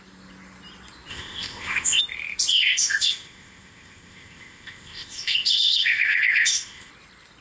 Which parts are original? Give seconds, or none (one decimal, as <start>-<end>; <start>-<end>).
0.0-1.1; 2.0-2.5; 6.9-7.4